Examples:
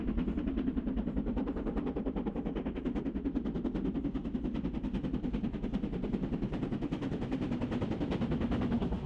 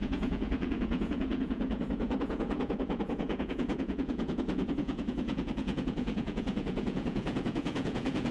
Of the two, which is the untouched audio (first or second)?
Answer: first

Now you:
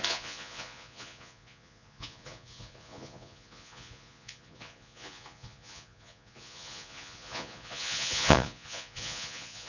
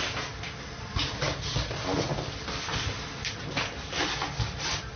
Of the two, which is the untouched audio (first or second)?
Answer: second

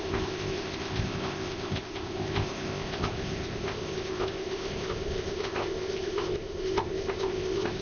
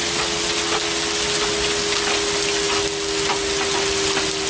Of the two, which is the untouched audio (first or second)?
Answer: second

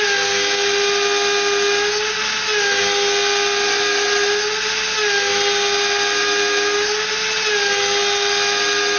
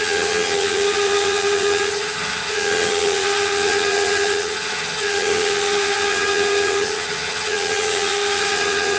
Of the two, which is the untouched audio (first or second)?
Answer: first